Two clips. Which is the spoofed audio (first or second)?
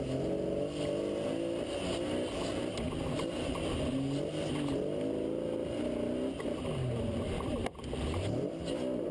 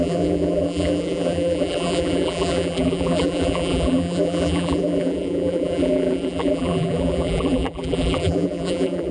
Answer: second